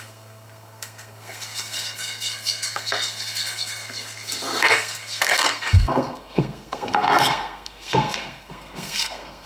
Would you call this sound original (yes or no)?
no